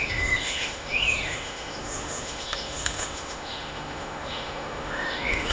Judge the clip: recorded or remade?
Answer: remade